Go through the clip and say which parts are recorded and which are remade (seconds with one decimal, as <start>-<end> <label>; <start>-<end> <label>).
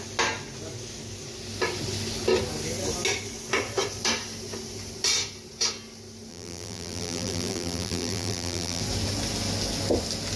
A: 0.0-6.3 recorded; 6.3-8.8 remade; 8.8-10.4 recorded